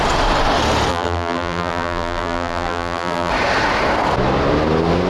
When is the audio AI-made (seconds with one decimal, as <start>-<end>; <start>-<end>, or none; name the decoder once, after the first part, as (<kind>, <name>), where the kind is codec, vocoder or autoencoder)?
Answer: 0.9-3.3 (vocoder, BigVGAN v2)